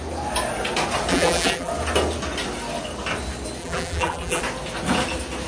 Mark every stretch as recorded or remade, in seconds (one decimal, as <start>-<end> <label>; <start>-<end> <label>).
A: 0.0-1.1 recorded; 1.1-1.7 remade; 1.7-3.6 recorded; 3.6-4.4 remade; 4.4-5.5 recorded